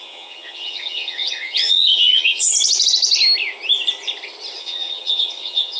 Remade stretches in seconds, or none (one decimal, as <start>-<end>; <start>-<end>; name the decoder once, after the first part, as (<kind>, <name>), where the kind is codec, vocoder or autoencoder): 0.0-2.5 (vocoder, HiFi-GAN); 4.6-5.8